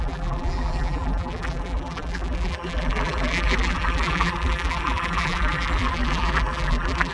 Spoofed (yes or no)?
yes